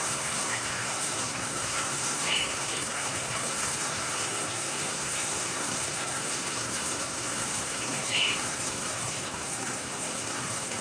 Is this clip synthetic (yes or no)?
yes